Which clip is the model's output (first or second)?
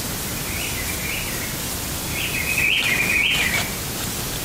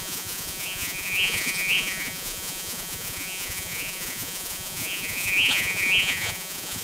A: second